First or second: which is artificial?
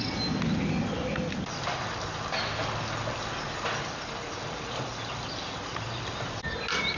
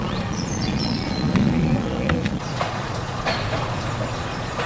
second